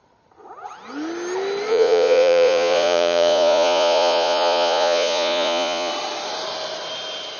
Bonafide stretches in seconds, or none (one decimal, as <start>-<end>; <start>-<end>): 0.0-1.7; 5.9-7.4